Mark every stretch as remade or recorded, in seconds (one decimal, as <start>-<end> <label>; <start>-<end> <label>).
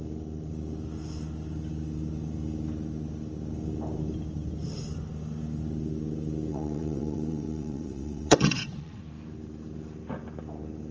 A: 0.0-6.5 recorded; 6.5-9.0 remade; 9.0-10.9 recorded